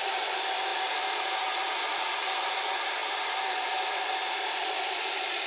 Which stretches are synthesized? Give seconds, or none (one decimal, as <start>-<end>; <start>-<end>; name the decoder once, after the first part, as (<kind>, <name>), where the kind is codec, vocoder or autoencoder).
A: 0.0-5.5 (vocoder, BigVGAN v2)